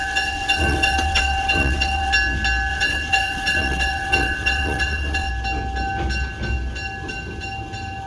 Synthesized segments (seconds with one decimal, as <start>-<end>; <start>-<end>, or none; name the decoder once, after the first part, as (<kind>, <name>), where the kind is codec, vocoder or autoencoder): 0.0-2.1 (vocoder, WaveNeXt); 2.7-5.3